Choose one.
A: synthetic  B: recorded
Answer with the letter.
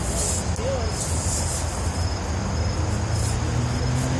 B